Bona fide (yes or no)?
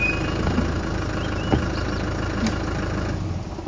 yes